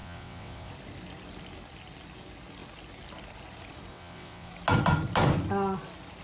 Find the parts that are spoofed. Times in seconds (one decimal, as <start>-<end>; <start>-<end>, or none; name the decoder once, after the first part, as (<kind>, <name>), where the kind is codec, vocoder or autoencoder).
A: 0.0-0.7 (vocoder, WaveNeXt); 3.9-4.5